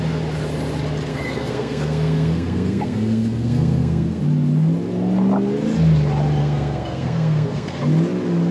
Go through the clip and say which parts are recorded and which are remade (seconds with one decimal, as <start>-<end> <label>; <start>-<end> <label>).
0.0-1.1 recorded; 1.1-4.2 remade; 4.2-6.4 recorded; 6.4-7.8 remade; 7.8-8.5 recorded